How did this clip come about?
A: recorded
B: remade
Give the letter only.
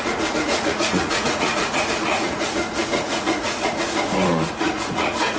B